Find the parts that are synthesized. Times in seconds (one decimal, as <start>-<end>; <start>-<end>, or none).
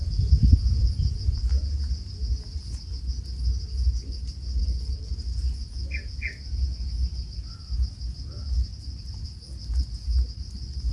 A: 4.6-5.1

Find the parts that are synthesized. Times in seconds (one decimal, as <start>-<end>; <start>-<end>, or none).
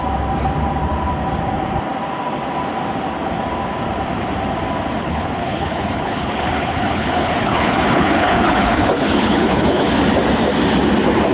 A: 5.0-9.9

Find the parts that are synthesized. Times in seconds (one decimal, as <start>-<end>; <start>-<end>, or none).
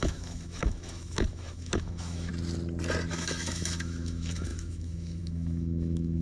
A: 0.0-2.3; 3.1-6.2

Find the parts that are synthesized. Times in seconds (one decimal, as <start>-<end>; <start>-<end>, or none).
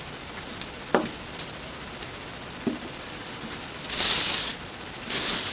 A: none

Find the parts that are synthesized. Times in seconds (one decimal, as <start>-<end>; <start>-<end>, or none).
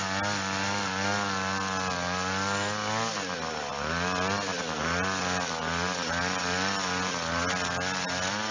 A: none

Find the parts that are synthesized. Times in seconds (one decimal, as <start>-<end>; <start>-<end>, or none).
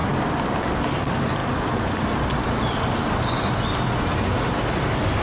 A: none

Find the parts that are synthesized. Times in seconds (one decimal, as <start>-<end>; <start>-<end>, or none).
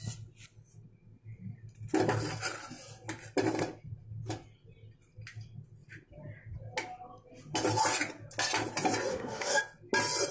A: 9.1-9.6